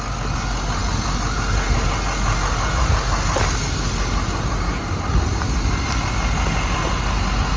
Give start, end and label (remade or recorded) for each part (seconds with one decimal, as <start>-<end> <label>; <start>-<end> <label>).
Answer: 0.0-7.6 recorded